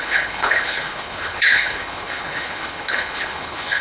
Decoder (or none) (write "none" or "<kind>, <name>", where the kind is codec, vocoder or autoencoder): codec, HILCodec